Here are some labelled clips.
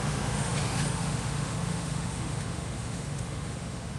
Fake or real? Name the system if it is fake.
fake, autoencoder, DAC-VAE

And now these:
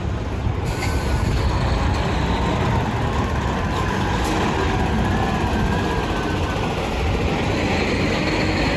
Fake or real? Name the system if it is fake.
real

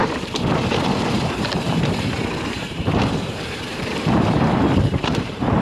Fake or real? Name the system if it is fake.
fake, vocoder, BigVGAN v2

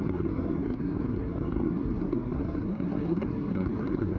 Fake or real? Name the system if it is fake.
fake, codec, SNAC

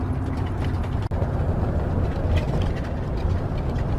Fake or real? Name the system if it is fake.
real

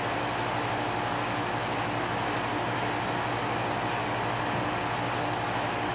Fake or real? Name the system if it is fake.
real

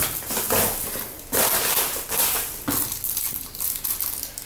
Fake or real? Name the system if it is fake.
real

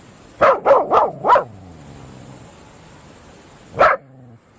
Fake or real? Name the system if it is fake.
real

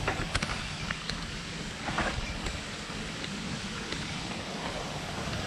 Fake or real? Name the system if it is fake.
fake, codec, DAC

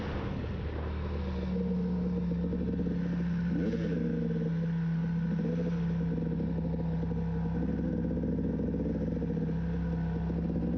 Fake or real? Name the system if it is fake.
real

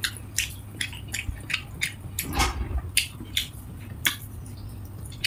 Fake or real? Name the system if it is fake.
real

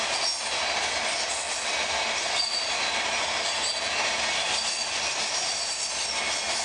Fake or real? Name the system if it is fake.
real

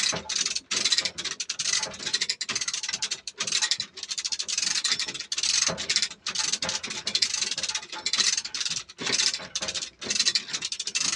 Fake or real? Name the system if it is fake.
real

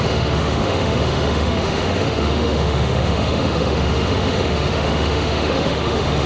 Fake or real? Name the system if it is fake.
fake, autoencoder, DAC-VAE